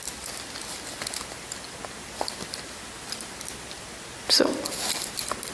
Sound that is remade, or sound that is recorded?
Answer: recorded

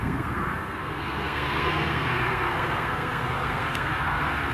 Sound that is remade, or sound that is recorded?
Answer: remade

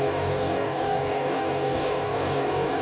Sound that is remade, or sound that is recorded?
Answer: remade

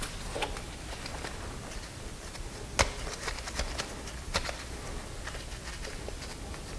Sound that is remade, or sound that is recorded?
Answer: recorded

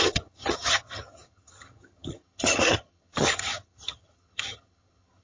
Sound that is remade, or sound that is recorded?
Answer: remade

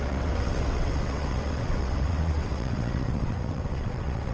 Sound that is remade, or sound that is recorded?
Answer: remade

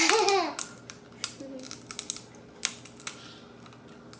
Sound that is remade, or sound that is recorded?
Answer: recorded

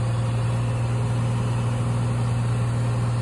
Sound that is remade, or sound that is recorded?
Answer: recorded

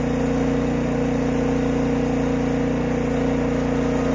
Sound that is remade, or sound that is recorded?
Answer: recorded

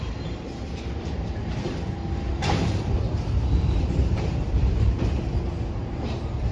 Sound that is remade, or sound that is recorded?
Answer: remade